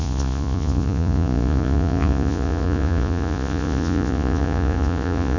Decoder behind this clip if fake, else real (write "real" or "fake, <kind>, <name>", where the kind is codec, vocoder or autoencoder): fake, vocoder, Vocos